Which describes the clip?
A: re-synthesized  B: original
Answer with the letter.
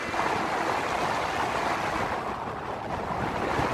B